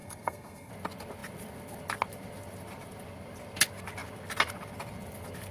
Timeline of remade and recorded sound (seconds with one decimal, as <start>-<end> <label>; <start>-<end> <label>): 0.0-0.7 remade; 0.7-5.5 recorded